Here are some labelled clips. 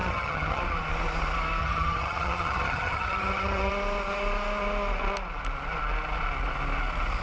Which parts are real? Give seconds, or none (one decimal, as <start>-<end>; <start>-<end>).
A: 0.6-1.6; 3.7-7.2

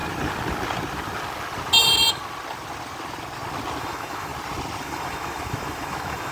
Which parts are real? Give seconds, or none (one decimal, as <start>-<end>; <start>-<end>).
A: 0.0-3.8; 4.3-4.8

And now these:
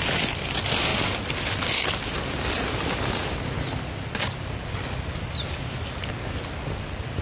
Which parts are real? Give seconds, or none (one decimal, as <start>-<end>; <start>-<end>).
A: 0.0-7.2